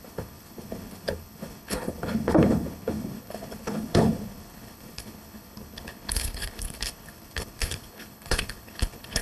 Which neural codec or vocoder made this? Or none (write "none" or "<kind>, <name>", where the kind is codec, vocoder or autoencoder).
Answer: codec, HILCodec